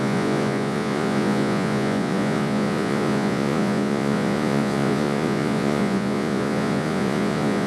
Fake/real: fake